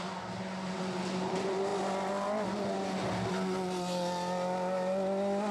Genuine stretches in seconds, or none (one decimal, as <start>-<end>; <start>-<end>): 0.0-5.5